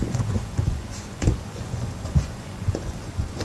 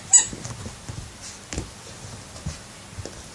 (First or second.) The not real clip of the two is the first